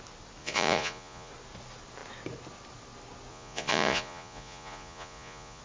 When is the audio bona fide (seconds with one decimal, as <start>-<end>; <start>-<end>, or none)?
0.0-0.4; 1.3-3.3